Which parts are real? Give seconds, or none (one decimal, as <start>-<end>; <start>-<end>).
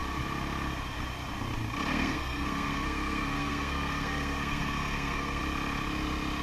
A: 0.0-1.9; 5.4-6.4